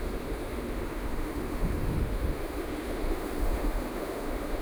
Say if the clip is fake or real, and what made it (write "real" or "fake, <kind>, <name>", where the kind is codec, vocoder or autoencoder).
fake, autoencoder, DAC-VAE